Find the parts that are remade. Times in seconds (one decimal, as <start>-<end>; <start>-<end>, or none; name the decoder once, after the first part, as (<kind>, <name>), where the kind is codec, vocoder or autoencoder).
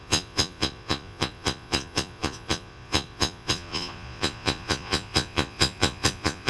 0.0-6.5 (vocoder, Vocos)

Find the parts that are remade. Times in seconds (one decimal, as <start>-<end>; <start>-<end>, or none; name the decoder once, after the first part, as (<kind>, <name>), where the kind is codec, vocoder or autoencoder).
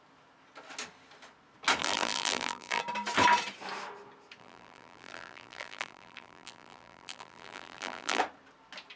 1.8-2.8 (vocoder, BigVGAN v2); 4.4-8.2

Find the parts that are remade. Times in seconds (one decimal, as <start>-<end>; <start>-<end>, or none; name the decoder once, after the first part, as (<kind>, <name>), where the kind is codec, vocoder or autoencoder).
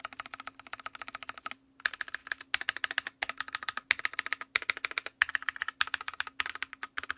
none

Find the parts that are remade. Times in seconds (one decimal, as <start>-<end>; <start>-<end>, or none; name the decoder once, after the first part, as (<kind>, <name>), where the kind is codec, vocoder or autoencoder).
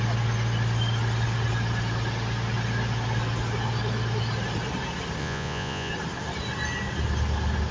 5.2-5.9 (vocoder, Vocos)